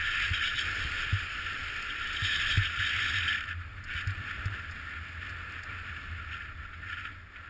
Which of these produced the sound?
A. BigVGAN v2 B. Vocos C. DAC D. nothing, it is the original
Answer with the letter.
D